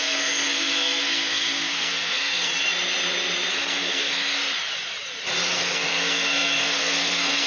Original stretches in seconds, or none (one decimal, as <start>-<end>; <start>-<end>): 2.5-3.5; 4.4-5.5